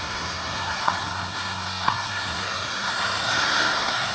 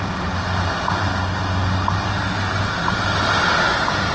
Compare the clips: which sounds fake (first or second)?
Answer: first